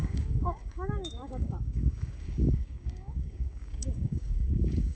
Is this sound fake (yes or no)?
yes